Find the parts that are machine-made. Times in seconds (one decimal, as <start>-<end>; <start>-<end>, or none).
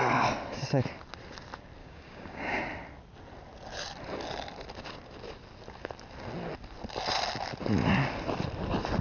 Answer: 1.8-2.6